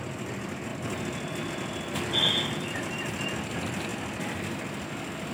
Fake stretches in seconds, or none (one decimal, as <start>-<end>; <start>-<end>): none